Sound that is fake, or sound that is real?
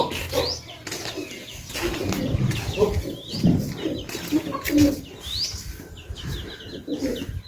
real